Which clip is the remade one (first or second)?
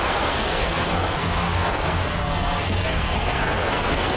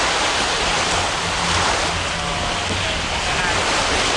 first